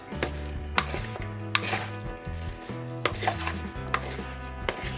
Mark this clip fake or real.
real